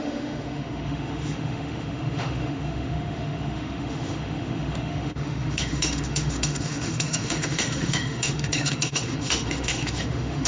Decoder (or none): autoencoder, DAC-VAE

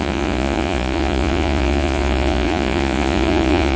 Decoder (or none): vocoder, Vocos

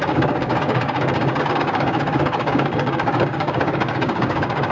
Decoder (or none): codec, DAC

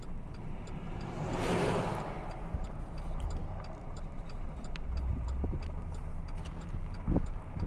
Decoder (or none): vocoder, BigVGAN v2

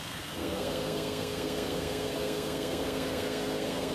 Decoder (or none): codec, SNAC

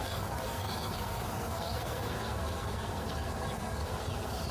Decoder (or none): codec, SNAC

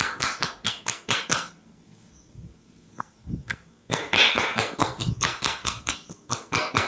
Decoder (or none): codec, SNAC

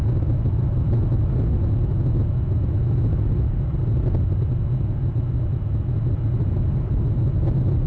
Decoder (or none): none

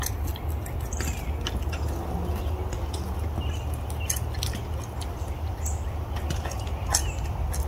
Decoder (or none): none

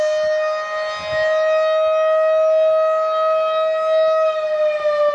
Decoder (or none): none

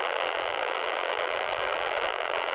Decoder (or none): vocoder, BigVGAN v2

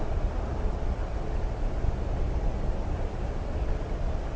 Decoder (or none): vocoder, BigVGAN v2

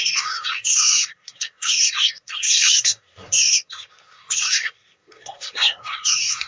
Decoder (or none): codec, SNAC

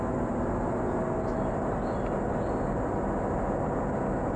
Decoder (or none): none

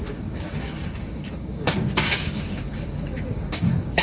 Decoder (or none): codec, DAC